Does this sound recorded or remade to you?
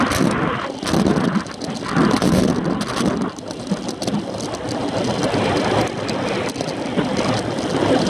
recorded